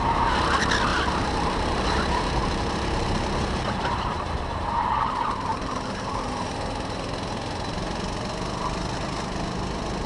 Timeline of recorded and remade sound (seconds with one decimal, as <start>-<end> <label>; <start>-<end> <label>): 0.0-0.9 recorded; 0.9-4.9 remade; 4.9-5.5 recorded; 5.5-6.3 remade; 6.3-10.1 recorded